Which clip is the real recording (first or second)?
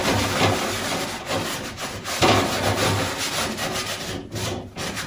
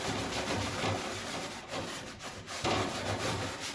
first